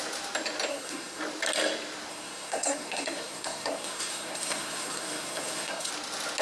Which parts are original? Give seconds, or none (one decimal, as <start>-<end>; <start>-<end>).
0.0-0.7; 1.2-2.1; 5.9-6.4